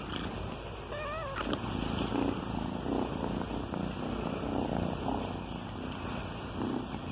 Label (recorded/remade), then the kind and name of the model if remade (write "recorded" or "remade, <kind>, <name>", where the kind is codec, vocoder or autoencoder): recorded